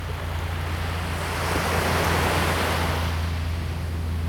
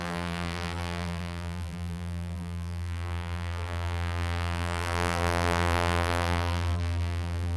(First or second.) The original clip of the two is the first